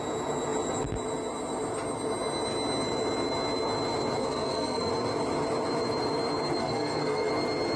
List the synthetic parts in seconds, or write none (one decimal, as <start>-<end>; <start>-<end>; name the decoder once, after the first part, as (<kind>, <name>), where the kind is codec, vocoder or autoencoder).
4.2-4.9 (codec, SNAC); 6.6-7.3